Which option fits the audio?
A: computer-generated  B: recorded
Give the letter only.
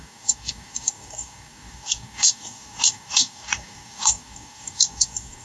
A